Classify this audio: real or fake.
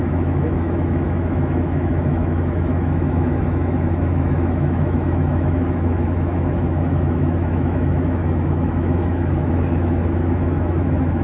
fake